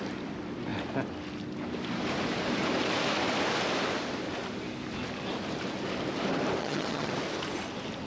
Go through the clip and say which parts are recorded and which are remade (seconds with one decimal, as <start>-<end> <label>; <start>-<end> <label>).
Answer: 0.0-6.6 recorded; 6.6-7.1 remade; 7.1-8.1 recorded